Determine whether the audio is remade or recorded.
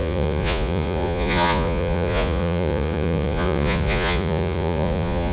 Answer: remade